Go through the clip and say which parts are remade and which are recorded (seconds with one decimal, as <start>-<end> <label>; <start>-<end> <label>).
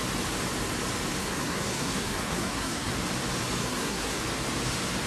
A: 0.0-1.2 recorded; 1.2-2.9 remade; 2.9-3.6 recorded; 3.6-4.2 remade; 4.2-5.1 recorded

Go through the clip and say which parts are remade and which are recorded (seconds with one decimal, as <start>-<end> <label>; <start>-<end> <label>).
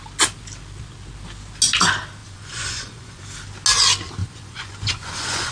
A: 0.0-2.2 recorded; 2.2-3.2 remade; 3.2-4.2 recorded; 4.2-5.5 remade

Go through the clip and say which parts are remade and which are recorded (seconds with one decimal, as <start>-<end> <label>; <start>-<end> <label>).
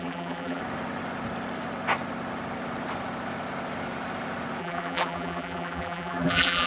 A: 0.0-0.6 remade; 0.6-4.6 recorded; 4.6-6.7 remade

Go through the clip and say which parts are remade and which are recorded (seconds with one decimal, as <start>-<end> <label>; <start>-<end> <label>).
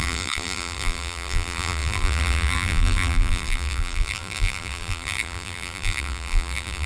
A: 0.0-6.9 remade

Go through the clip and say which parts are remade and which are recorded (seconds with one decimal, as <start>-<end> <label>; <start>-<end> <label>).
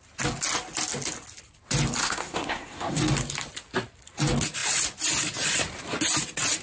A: 0.0-2.0 recorded; 2.0-3.0 remade; 3.0-6.6 recorded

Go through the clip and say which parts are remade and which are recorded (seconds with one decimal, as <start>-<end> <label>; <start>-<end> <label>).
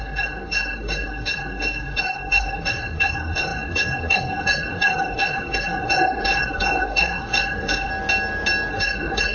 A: 0.0-7.9 remade; 7.9-8.7 recorded; 8.7-9.3 remade